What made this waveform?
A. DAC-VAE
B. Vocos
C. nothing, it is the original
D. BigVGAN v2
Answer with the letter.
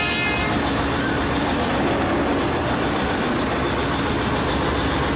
C